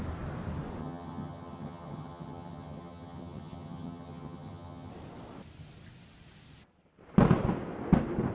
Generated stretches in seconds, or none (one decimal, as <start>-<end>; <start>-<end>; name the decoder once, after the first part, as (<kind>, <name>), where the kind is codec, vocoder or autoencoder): 0.8-4.9 (vocoder, HiFi-GAN)